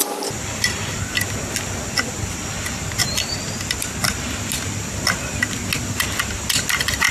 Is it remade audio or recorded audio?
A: recorded